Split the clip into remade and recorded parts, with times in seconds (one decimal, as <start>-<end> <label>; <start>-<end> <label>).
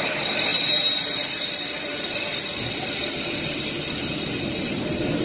0.0-5.2 recorded